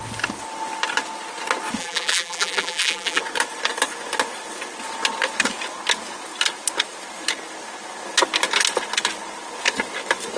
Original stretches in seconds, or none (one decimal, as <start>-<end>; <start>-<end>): 0.0-1.8; 3.2-10.4